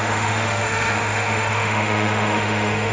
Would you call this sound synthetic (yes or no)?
yes